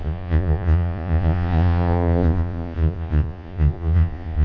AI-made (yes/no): yes